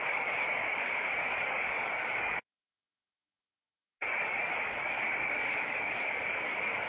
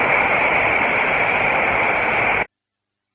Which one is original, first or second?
second